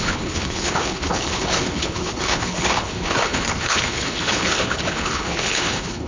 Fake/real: fake